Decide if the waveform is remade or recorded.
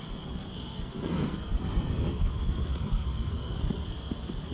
remade